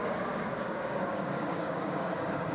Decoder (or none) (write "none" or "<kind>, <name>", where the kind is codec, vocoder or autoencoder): codec, DAC